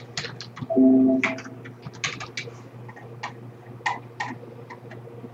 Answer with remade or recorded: recorded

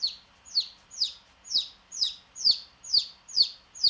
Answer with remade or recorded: remade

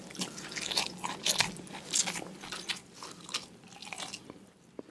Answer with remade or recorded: recorded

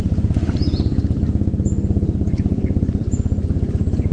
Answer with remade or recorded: remade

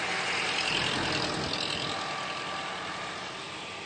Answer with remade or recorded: recorded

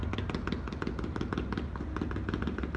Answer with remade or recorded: recorded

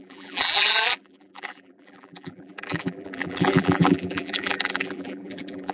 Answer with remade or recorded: remade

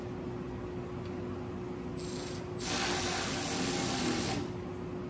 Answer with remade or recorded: recorded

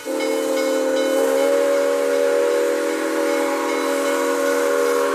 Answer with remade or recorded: recorded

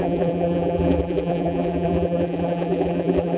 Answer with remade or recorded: remade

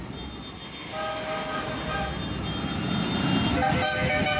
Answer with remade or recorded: recorded